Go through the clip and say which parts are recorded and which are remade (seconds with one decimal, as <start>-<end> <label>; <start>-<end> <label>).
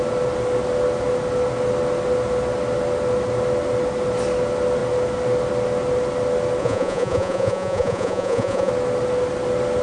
0.0-6.6 recorded; 6.6-8.7 remade; 8.7-9.8 recorded